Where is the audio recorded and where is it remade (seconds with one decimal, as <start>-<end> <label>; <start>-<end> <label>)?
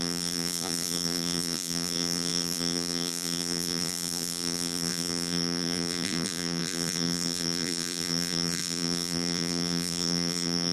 0.0-10.7 remade